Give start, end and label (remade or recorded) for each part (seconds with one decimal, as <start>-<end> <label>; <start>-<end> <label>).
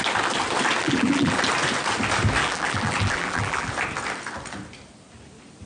0.0-0.8 recorded; 0.8-1.4 remade; 1.4-2.4 recorded; 2.4-3.7 remade; 3.7-5.7 recorded